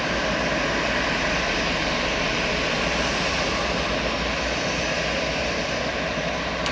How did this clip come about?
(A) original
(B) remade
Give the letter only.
A